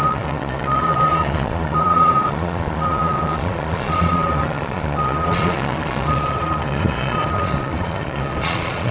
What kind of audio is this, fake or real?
fake